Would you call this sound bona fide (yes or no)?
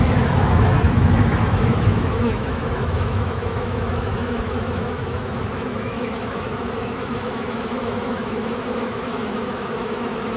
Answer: no